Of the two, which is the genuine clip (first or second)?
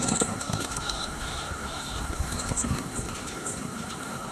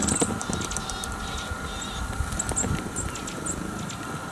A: second